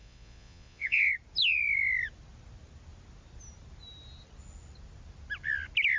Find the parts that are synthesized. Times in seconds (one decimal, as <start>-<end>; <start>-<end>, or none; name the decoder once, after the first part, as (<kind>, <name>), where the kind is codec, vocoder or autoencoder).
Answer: 0.0-1.1 (vocoder, Vocos)